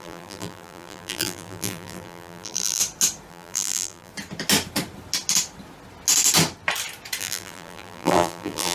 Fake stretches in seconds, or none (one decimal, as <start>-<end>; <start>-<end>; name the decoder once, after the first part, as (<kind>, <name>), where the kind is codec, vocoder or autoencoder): 0.0-2.8 (vocoder, BigVGAN v2); 3.3-4.1; 7.2-8.7